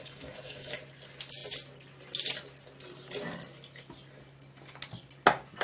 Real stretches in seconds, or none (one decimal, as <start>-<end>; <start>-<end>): 0.7-5.6